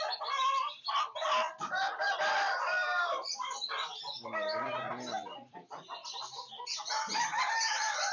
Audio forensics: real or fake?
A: real